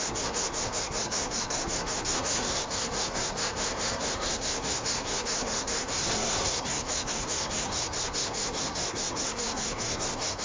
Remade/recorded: remade